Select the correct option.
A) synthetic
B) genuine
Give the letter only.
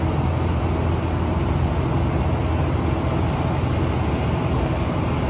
B